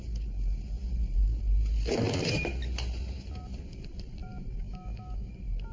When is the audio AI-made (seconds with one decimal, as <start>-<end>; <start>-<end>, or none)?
4.6-5.3